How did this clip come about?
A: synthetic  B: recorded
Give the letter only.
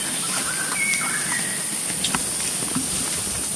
B